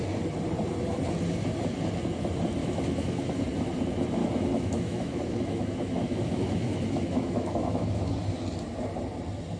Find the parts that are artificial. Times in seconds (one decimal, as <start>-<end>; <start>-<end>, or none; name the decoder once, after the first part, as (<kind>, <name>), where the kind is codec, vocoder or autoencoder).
2.6-3.4 (autoencoder, DAC-VAE); 4.2-8.1